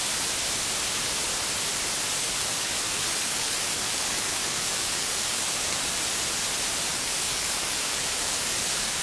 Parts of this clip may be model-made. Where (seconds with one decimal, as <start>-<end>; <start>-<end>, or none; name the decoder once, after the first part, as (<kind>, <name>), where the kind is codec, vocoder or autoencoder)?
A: 2.2-5.9 (codec, DAC); 6.9-9.0